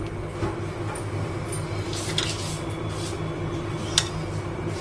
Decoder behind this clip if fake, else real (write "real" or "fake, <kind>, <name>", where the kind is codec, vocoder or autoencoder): real